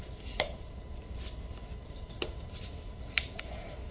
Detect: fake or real fake